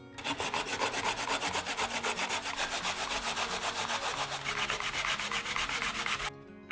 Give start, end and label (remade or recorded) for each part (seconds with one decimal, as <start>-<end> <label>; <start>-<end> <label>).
0.0-6.7 recorded